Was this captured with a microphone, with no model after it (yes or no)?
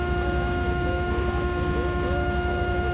no